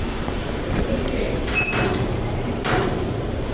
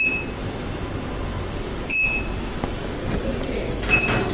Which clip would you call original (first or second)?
second